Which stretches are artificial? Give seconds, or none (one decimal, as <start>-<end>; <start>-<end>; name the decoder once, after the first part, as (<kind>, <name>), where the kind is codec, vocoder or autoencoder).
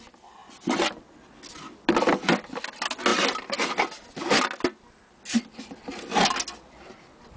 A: none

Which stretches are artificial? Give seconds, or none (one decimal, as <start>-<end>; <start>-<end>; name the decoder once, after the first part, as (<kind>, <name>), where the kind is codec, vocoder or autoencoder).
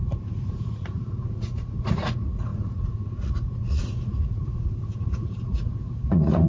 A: 0.0-6.5 (vocoder, Vocos)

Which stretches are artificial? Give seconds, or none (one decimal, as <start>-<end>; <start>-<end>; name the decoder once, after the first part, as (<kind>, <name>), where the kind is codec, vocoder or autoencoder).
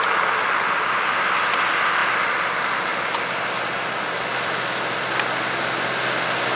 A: none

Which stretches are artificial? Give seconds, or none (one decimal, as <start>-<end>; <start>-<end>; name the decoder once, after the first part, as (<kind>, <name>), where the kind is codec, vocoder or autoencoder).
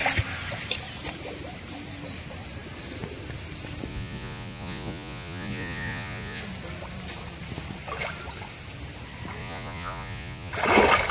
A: 3.9-6.4 (vocoder, Vocos); 9.4-10.5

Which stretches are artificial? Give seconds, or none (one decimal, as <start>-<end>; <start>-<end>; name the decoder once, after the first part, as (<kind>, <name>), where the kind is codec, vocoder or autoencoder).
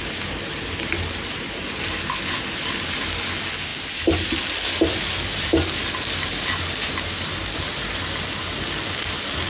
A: none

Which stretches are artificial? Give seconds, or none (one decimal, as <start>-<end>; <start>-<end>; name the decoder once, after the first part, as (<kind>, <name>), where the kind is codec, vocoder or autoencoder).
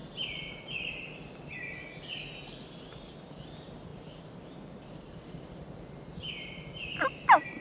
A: none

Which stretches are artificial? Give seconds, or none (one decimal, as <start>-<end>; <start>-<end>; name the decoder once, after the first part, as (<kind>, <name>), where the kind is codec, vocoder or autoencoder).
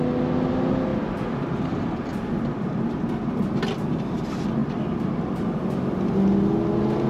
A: 0.9-3.1 (vocoder, BigVGAN v2); 4.6-5.6